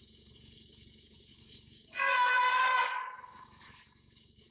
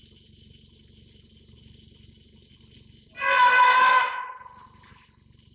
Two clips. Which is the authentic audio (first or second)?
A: second